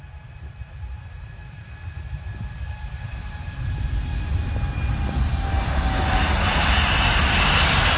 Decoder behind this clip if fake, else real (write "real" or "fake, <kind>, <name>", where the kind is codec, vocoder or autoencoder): real